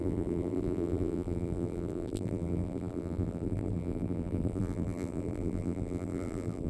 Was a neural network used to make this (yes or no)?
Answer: yes